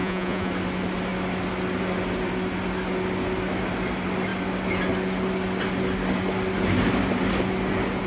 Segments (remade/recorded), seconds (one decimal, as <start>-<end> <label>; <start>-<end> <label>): 0.0-0.5 remade; 0.5-8.1 recorded